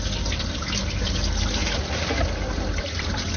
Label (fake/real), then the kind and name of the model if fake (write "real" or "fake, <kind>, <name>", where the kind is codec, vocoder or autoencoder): real